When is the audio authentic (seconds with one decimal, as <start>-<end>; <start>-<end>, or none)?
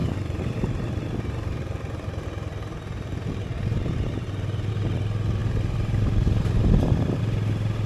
4.7-5.4; 7.2-7.9